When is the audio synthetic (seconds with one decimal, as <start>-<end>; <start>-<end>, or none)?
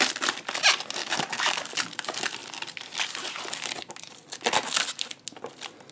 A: 1.0-1.7